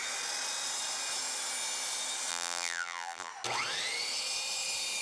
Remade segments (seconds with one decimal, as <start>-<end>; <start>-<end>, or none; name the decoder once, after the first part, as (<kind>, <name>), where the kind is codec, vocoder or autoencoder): 2.3-3.3 (vocoder, BigVGAN v2)